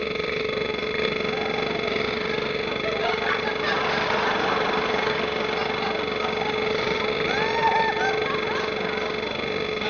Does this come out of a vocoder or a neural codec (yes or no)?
no